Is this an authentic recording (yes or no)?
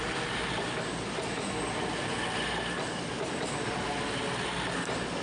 yes